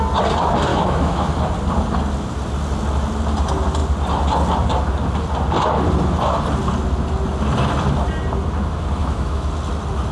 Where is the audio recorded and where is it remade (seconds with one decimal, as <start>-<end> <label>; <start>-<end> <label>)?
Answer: 0.0-0.7 recorded; 0.7-1.3 remade; 1.3-9.0 recorded; 9.0-9.5 remade; 9.5-10.1 recorded